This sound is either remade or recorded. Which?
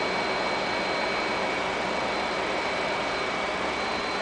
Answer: recorded